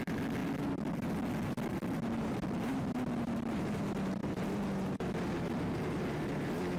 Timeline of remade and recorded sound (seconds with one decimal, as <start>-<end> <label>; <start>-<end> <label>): 0.0-6.8 recorded